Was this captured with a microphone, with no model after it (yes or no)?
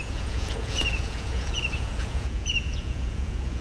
no